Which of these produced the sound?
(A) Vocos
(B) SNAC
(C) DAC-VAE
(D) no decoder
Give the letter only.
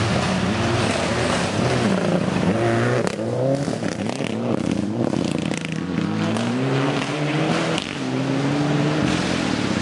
D